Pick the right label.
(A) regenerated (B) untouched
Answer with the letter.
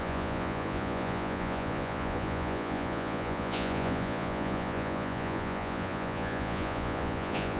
A